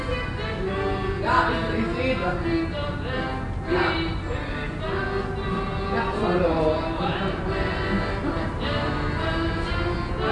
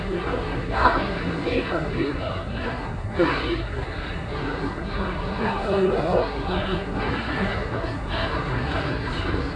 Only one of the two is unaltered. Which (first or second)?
first